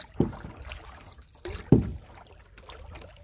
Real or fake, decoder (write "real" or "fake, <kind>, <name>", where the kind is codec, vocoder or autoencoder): real